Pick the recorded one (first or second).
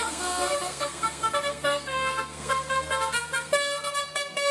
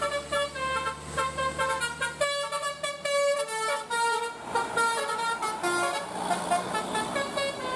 second